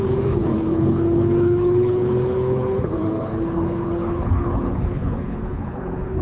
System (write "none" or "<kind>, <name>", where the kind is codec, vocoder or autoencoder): codec, HILCodec